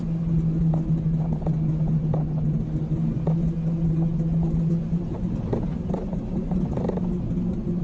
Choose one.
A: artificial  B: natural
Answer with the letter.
B